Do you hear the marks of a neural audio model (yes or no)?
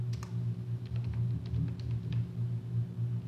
no